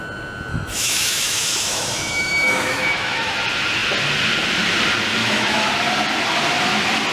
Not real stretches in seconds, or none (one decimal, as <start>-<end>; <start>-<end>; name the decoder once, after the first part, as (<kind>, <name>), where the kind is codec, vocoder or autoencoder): 0.5-3.4 (autoencoder, DAC-VAE); 5.2-5.7